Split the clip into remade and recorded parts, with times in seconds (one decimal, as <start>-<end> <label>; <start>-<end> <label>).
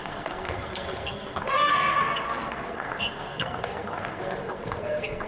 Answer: 0.0-5.3 remade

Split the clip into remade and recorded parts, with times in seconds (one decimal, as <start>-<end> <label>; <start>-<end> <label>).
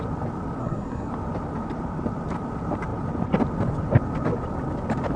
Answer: 0.0-0.6 recorded; 0.6-1.1 remade; 1.1-5.2 recorded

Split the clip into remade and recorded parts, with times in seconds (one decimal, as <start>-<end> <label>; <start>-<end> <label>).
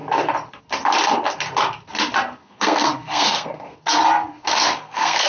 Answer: 0.0-2.4 recorded; 2.4-3.8 remade; 3.8-4.3 recorded; 4.3-5.3 remade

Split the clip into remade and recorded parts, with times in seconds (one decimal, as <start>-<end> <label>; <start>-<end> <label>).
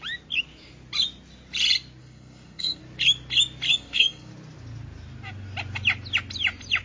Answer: 0.0-2.0 recorded; 2.0-2.8 remade; 2.8-3.7 recorded; 3.7-4.3 remade; 4.3-6.8 recorded